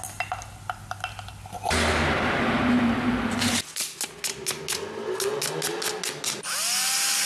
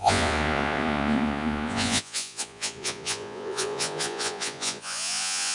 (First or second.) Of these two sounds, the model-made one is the second